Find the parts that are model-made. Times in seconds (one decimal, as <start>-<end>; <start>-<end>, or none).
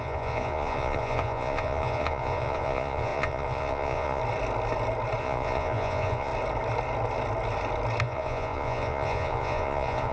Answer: 0.0-4.2; 5.2-6.3; 8.0-10.1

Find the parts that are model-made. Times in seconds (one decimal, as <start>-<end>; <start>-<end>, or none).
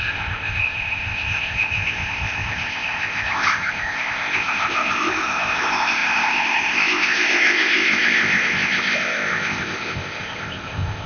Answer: 0.0-11.1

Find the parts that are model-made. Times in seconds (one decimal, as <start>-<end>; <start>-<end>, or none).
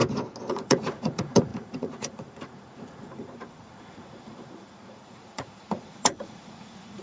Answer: 0.5-7.0